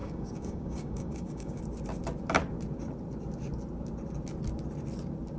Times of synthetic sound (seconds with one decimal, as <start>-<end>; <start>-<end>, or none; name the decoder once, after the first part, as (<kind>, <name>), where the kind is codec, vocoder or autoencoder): 0.0-1.6 (codec, DAC)